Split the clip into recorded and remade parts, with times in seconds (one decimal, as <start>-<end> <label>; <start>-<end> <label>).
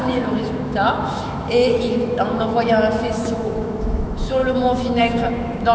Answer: 0.0-5.7 remade